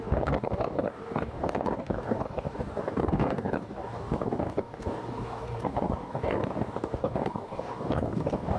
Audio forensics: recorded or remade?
remade